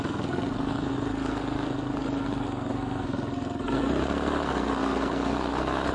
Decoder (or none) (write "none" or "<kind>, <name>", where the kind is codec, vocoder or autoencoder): codec, SNAC